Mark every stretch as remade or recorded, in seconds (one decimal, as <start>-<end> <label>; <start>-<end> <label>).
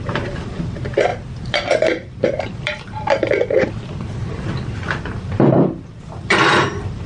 0.0-7.1 remade